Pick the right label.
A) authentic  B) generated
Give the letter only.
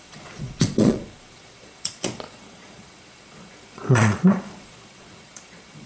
B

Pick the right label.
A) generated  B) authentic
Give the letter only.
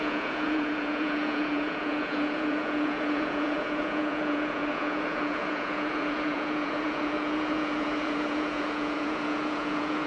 A